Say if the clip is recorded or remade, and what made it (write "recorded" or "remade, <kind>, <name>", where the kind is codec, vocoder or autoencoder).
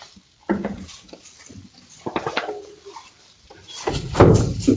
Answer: recorded